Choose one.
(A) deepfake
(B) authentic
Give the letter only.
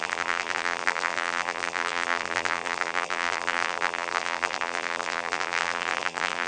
A